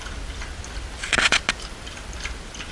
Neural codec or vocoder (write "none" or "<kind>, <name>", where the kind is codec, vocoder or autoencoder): none